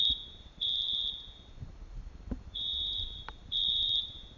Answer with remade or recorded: remade